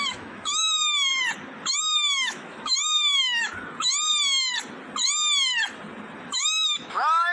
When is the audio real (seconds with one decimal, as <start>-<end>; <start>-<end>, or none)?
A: 1.1-1.7; 3.5-6.3